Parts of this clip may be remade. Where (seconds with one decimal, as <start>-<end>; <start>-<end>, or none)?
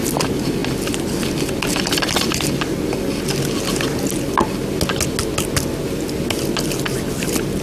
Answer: none